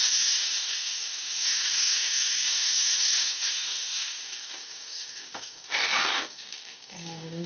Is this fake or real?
fake